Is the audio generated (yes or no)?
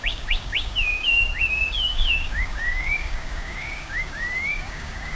yes